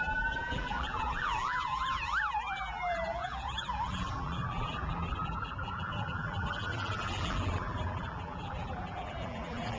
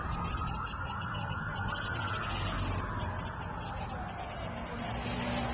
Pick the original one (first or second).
second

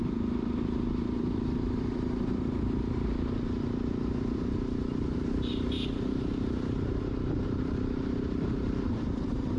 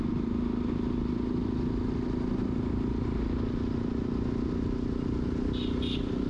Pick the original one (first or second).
second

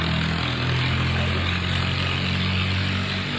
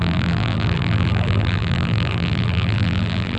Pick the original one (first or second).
first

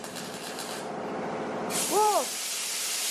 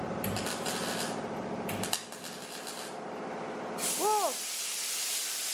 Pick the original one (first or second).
second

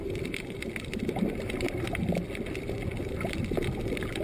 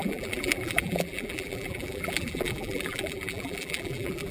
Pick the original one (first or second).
first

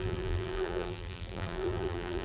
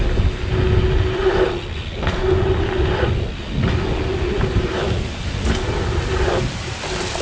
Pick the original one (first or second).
second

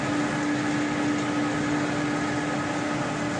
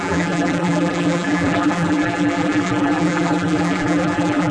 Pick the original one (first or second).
first